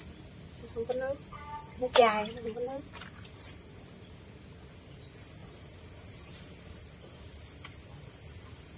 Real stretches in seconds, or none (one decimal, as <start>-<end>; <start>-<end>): 0.0-1.3; 3.8-5.4; 6.8-8.8